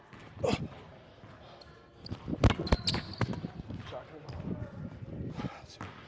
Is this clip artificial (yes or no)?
no